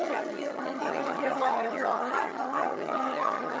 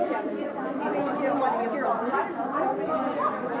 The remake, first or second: first